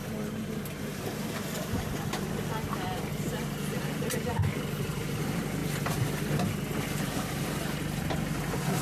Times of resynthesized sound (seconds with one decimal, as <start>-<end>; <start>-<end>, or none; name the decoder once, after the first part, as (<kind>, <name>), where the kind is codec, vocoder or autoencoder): none